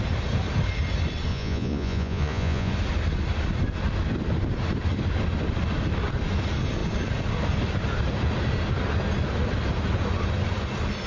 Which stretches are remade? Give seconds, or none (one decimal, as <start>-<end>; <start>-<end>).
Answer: 1.3-2.7